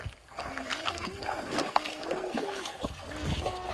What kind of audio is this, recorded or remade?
remade